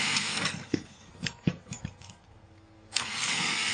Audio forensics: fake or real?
fake